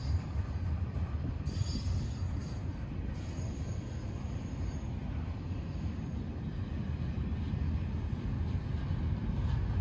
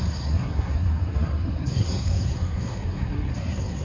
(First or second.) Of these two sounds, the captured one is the first